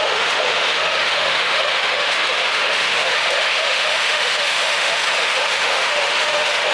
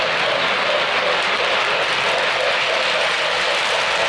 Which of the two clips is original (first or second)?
second